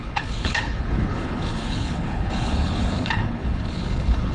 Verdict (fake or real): fake